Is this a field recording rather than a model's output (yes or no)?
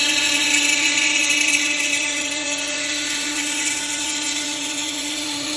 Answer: no